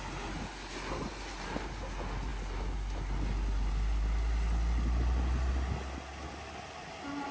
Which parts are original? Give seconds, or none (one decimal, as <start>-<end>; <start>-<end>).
0.0-7.3